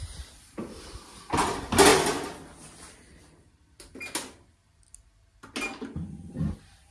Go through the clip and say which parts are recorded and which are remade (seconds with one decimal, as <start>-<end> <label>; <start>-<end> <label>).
0.0-1.9 recorded; 1.9-3.4 remade; 3.4-6.9 recorded